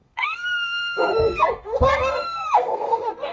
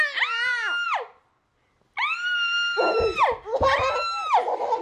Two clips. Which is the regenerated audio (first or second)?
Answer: first